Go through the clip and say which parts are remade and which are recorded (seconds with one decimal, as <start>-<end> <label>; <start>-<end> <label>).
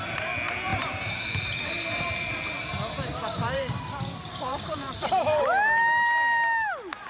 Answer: 0.0-0.7 recorded; 0.7-4.0 remade; 4.0-4.5 recorded; 4.5-5.5 remade; 5.5-7.1 recorded